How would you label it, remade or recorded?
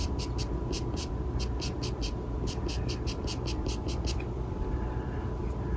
recorded